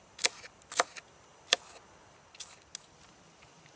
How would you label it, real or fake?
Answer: real